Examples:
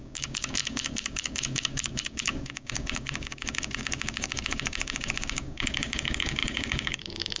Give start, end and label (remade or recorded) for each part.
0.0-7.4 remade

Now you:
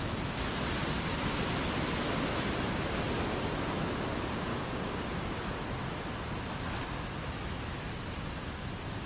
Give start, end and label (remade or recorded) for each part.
0.0-4.5 recorded; 4.5-5.4 remade; 5.4-9.1 recorded

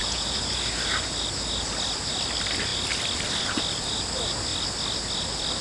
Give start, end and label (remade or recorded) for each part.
0.0-0.7 remade; 0.7-5.6 recorded

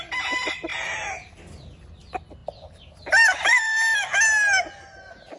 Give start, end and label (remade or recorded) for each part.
0.0-5.4 recorded

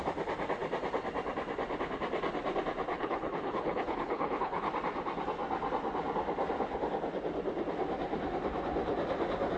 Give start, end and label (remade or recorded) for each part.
0.0-2.9 recorded; 2.9-4.7 remade; 4.7-9.6 recorded

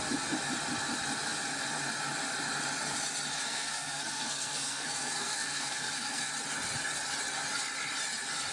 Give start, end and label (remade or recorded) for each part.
0.0-3.3 recorded; 3.3-6.3 remade; 6.3-8.5 recorded